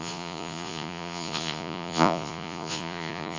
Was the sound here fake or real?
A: fake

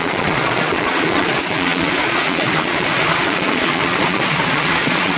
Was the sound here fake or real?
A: fake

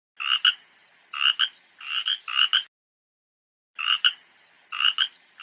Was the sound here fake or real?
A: real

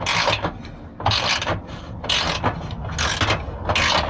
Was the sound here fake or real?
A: real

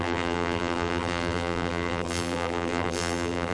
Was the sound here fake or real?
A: fake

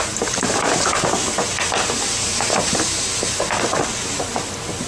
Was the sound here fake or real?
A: real